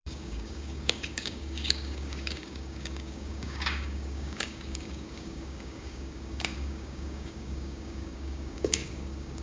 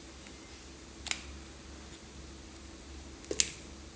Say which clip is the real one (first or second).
second